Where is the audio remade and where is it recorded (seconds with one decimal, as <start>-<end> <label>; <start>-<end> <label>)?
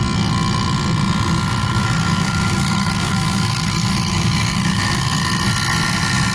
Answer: 0.0-1.6 recorded; 1.6-5.4 remade; 5.4-6.3 recorded